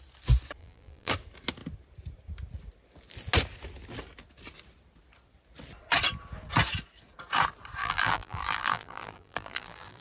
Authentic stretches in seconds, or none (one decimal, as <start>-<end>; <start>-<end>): 0.0-0.6; 1.1-7.8